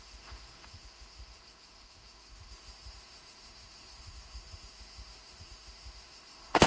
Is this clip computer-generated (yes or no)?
yes